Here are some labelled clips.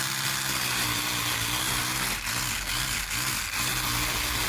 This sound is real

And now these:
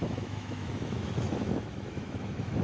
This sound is fake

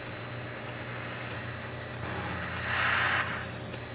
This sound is real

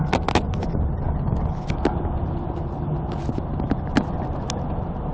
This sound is real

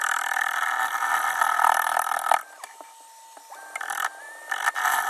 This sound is real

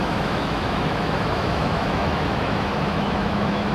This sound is fake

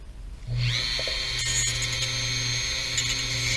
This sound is real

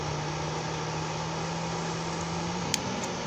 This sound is real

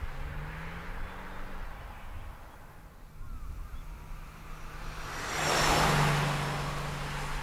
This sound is real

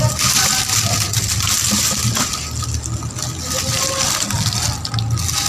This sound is real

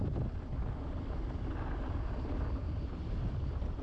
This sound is real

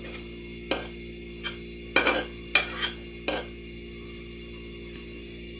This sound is real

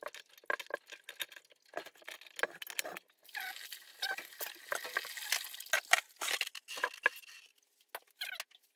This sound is real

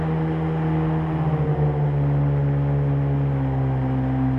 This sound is real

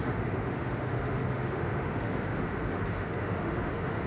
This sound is fake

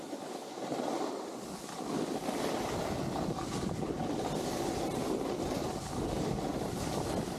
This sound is real